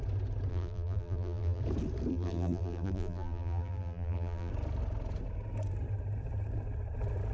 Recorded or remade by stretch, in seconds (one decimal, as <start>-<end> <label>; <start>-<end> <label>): 0.0-0.5 recorded; 0.5-1.6 remade; 1.6-2.1 recorded; 2.1-4.5 remade; 4.5-7.3 recorded